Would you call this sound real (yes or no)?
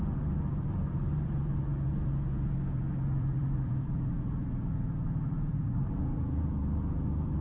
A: no